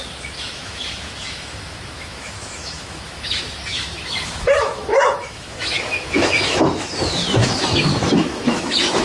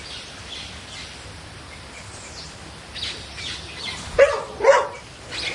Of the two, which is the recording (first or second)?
second